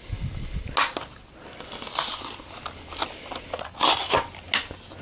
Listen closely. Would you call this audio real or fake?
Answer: real